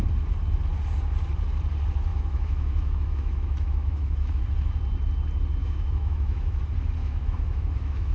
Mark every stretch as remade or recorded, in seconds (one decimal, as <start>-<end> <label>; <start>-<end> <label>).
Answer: 0.0-2.1 recorded; 2.1-4.4 remade; 4.4-5.6 recorded; 5.6-6.6 remade; 6.6-7.0 recorded; 7.0-8.1 remade